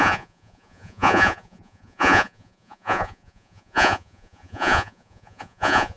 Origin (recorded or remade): remade